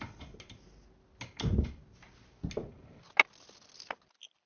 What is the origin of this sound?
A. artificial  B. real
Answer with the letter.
B